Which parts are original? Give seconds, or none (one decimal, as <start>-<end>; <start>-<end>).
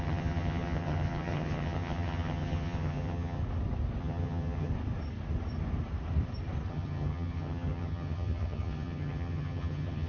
3.4-4.0; 4.7-6.7